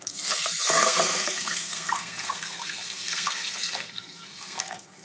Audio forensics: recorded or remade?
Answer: remade